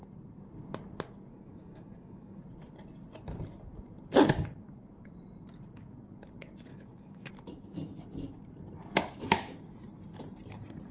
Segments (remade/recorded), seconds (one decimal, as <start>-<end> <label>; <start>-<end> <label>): 0.0-1.3 recorded; 1.3-2.4 remade; 2.4-6.7 recorded; 6.7-7.3 remade; 7.3-10.9 recorded

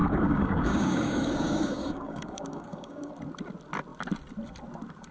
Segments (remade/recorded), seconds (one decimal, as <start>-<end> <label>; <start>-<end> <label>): 0.0-3.1 remade; 3.1-5.1 recorded

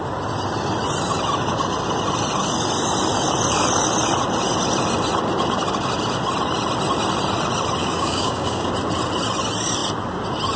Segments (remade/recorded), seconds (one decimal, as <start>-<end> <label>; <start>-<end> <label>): 0.0-7.8 recorded; 7.8-8.7 remade; 8.7-10.6 recorded

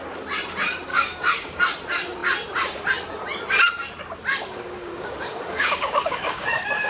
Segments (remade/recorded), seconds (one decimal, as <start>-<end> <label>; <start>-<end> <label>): 0.0-0.9 recorded; 0.9-1.6 remade; 1.6-4.3 recorded; 4.3-6.9 remade